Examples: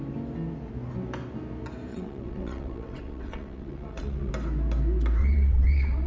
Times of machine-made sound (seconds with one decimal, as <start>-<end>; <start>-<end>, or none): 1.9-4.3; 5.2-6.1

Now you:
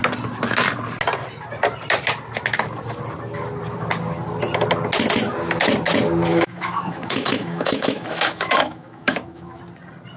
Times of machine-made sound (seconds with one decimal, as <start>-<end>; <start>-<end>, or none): 6.3-9.6

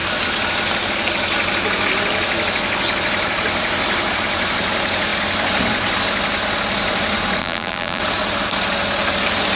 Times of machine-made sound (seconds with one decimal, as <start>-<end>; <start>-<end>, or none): 7.4-8.0

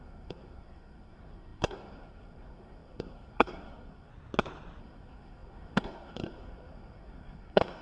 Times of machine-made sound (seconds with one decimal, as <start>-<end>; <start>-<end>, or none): 0.0-4.1; 4.8-7.8

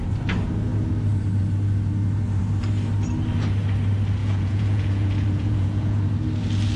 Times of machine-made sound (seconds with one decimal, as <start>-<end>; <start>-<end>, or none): 4.2-6.0

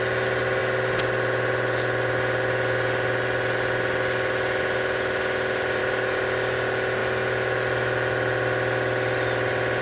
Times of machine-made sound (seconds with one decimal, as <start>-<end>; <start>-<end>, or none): none

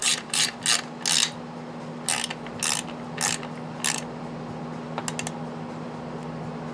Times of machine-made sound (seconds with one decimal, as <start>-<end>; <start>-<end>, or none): 0.0-0.6